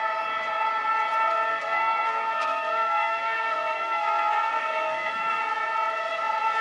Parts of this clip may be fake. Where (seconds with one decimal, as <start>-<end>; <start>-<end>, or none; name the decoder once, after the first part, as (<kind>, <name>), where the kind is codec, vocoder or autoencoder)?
1.5-5.4 (codec, SNAC)